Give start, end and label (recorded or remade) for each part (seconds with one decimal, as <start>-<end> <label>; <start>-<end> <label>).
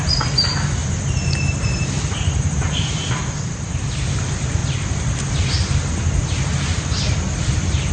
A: 0.0-7.9 recorded